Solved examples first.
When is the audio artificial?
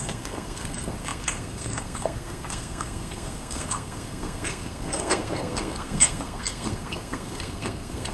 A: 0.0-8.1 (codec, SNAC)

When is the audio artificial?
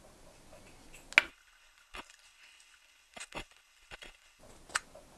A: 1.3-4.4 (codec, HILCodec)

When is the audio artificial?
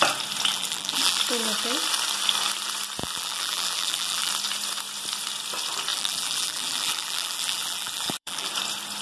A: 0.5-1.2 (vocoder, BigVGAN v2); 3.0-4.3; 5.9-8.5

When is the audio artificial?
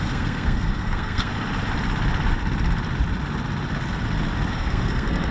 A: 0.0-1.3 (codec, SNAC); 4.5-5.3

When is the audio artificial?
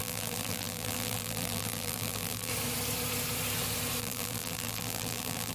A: 0.0-2.5 (vocoder, BigVGAN v2); 4.0-5.5